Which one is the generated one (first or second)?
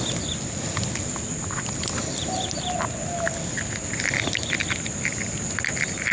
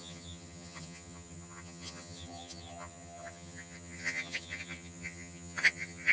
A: second